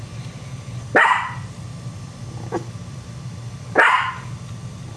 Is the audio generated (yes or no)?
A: no